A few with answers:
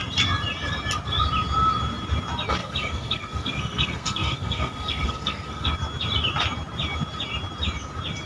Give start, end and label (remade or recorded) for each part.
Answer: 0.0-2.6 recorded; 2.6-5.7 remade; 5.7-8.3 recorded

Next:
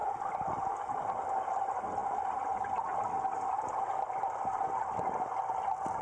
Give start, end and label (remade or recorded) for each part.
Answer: 0.0-6.0 recorded

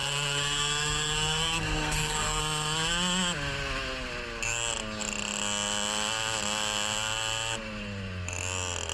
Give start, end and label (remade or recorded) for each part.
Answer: 0.0-2.4 remade; 2.4-8.9 recorded